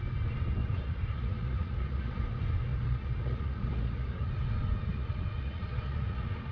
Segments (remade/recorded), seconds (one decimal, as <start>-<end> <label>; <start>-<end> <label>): 0.0-0.6 recorded; 0.6-2.2 remade; 2.2-2.7 recorded; 2.7-4.3 remade; 4.3-4.9 recorded; 4.9-6.5 remade